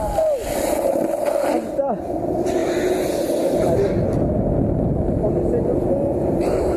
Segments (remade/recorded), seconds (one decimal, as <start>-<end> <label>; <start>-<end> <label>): 0.0-6.8 recorded